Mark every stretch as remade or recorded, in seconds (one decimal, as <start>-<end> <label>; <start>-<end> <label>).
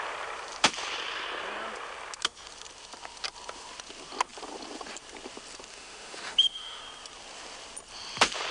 0.0-5.7 recorded; 5.7-6.8 remade; 6.8-8.5 recorded